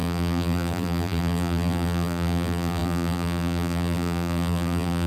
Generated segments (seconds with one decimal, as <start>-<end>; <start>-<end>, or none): 0.0-5.1